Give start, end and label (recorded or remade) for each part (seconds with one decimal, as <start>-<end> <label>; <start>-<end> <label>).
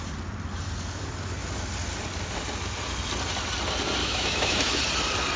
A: 0.0-4.0 recorded; 4.0-4.8 remade; 4.8-5.4 recorded